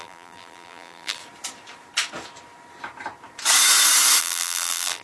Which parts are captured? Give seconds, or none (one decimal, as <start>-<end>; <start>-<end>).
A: 1.2-4.2